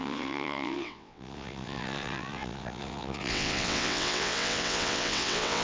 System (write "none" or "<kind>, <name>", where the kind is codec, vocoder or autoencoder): vocoder, WaveNeXt